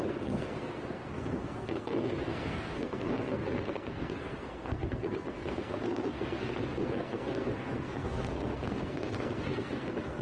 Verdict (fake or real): fake